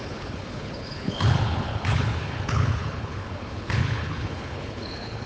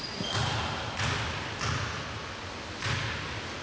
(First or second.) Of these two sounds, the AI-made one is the first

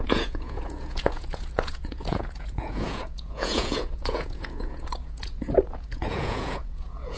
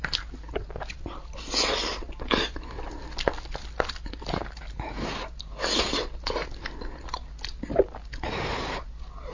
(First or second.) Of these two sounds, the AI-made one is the first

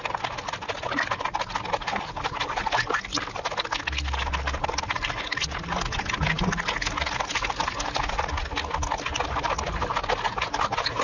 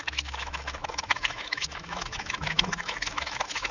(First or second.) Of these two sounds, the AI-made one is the second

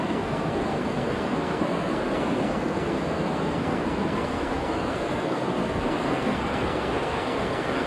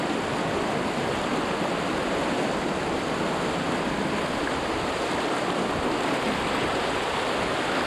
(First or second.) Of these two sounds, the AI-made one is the first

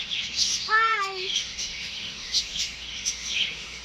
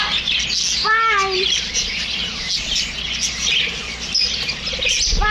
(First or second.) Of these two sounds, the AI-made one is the first